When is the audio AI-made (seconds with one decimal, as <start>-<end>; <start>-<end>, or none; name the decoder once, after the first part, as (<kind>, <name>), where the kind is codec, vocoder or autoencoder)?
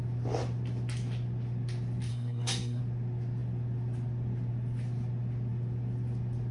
2.1-2.8 (codec, SNAC)